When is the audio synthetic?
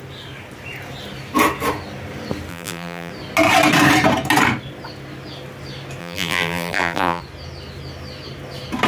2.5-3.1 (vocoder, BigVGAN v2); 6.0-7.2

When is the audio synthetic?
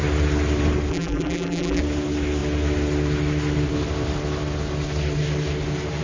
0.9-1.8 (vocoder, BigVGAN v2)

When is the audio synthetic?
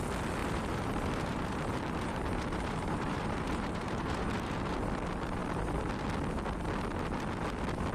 0.4-4.8 (vocoder, BigVGAN v2)